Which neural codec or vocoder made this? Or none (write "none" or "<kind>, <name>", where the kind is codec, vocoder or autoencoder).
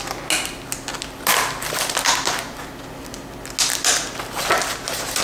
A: none